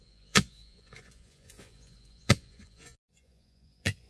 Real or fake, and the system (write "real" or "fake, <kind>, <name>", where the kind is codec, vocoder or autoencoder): fake, vocoder, Vocos